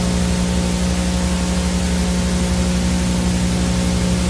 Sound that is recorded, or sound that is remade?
recorded